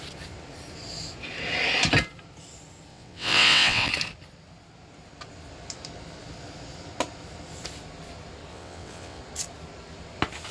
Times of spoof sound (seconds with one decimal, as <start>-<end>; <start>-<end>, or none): 2.9-3.9; 8.5-9.2